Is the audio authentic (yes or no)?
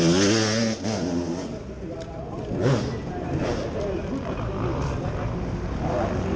yes